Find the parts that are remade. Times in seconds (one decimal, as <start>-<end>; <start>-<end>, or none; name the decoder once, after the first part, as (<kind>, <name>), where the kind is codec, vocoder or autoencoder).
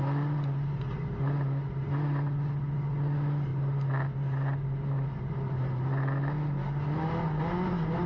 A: none